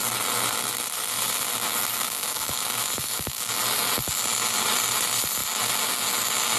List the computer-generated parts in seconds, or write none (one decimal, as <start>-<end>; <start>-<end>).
2.0-3.5